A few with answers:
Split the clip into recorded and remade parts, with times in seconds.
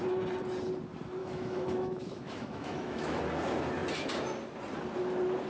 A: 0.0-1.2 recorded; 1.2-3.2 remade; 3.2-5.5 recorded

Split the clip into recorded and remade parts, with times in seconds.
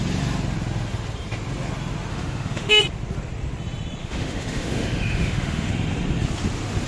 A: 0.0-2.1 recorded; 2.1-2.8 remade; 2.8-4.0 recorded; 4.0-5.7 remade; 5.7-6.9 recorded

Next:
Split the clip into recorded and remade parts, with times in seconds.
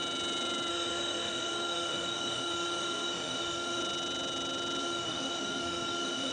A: 0.0-0.7 recorded; 0.7-3.8 remade; 3.8-4.8 recorded; 4.8-6.3 remade